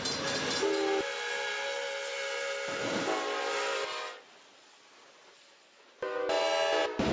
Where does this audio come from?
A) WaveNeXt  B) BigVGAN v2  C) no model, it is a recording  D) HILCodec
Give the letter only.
C